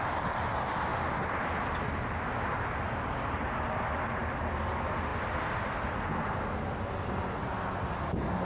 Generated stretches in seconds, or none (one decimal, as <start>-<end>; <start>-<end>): none